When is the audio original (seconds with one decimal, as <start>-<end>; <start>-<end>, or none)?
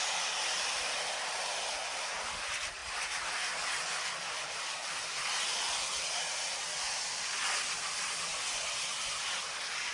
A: 0.0-9.9